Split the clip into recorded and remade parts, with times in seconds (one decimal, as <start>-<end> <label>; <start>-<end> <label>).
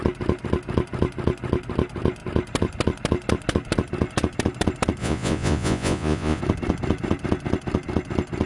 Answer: 0.0-5.0 recorded; 5.0-6.4 remade; 6.4-8.5 recorded